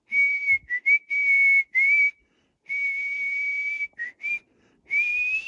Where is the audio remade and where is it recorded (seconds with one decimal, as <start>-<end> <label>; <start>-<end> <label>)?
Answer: 0.0-5.5 recorded